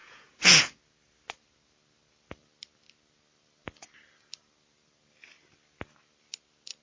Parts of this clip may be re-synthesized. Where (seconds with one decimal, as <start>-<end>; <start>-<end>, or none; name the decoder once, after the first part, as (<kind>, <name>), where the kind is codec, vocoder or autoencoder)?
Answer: 0.0-0.6 (vocoder, Vocos)